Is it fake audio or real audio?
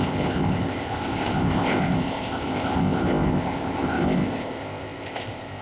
fake